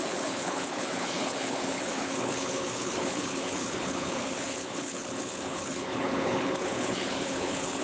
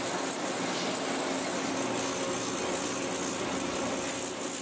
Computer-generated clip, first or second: first